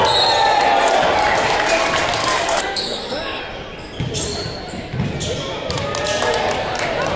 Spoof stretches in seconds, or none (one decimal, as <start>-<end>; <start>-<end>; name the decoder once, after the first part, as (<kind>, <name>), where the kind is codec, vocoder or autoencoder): 2.2-3.4 (codec, DAC)